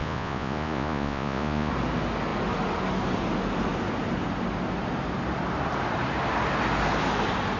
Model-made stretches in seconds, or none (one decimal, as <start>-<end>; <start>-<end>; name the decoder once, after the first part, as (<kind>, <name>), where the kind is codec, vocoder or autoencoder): 0.0-1.7 (vocoder, Vocos)